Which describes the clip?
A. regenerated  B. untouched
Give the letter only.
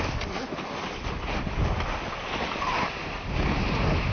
B